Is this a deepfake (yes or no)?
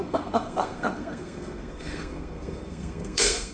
yes